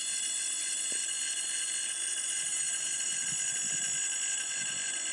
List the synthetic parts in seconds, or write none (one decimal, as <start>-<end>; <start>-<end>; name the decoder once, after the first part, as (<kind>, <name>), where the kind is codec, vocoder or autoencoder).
2.3-3.3 (vocoder, BigVGAN v2)